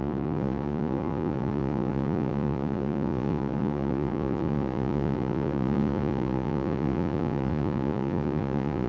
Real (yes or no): no